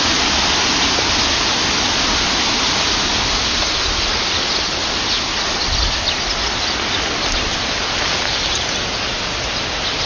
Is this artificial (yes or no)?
no